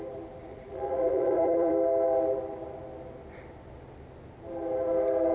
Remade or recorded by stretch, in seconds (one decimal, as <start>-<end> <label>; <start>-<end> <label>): 0.0-0.5 recorded; 0.5-1.7 remade; 1.7-5.3 recorded